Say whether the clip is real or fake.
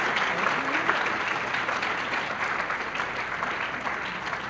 real